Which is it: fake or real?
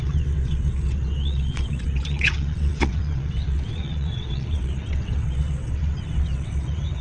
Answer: fake